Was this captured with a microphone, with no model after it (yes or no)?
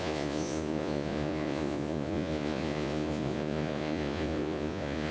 no